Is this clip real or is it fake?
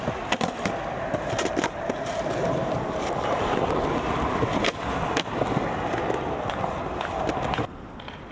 real